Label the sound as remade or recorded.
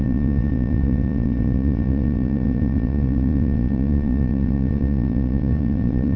remade